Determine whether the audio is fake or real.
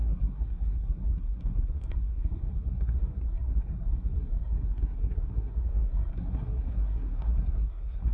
fake